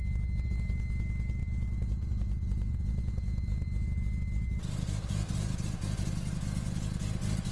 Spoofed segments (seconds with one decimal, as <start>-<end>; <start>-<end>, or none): none

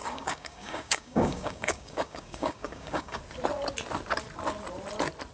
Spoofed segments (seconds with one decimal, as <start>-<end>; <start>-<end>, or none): 0.0-3.2